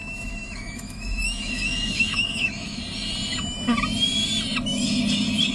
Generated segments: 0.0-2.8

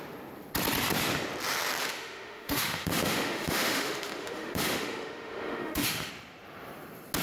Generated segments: 1.8-6.1

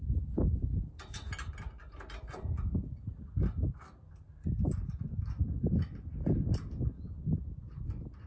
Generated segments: none

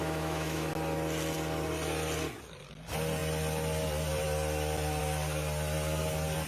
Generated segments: 0.0-0.7

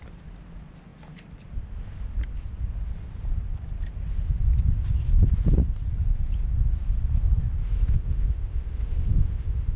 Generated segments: 7.6-9.8

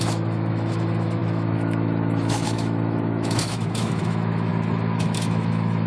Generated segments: 0.0-4.5; 5.0-5.9

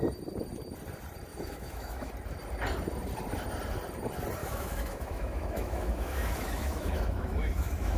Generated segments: 1.3-2.1; 4.4-8.0

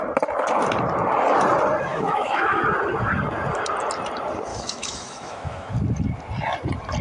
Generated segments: 1.9-2.6; 4.5-5.7